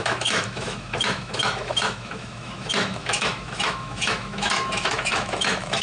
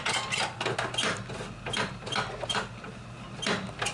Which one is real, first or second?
second